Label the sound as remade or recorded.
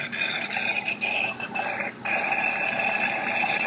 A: recorded